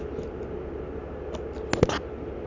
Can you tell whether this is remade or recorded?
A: recorded